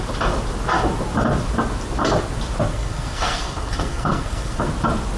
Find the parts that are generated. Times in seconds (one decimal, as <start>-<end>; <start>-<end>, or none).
2.7-4.7